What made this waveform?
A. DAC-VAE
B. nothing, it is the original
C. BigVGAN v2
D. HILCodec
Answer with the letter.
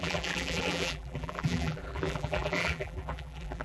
C